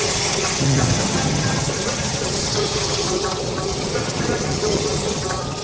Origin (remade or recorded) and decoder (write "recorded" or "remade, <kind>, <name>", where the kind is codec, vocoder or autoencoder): remade, vocoder, HiFi-GAN